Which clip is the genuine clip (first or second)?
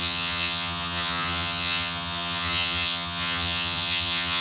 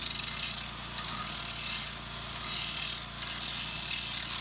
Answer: second